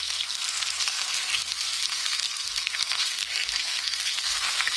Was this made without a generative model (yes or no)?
no